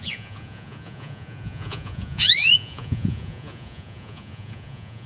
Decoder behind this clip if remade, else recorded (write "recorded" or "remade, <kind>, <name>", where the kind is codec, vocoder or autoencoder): remade, vocoder, Vocos